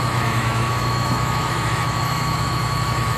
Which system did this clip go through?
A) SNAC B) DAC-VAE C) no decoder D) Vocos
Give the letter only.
B